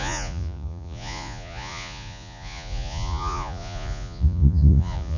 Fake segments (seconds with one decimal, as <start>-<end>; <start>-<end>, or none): 0.0-5.2